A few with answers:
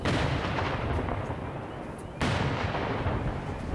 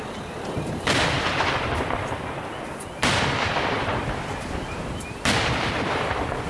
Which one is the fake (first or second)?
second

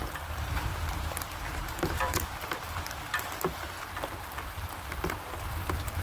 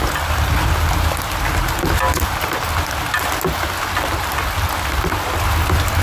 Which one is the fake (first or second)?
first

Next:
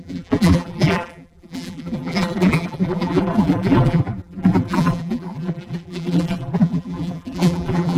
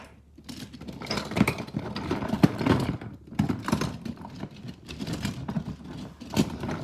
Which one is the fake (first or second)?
first